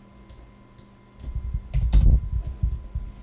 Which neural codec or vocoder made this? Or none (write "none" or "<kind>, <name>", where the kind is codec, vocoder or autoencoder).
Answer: none